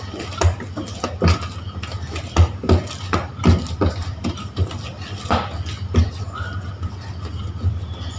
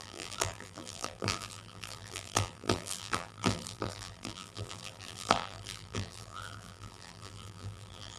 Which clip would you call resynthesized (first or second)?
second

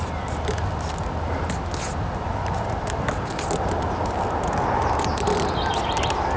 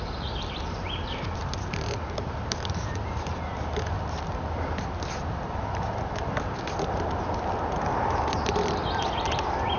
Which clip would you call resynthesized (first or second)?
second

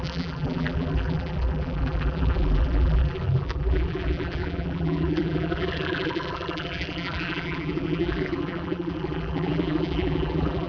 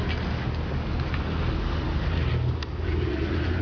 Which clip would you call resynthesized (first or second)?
first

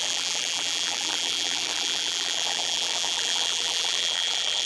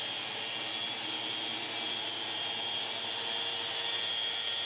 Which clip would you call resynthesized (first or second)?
first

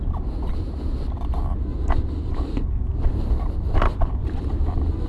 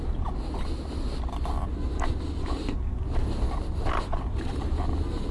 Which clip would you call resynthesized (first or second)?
first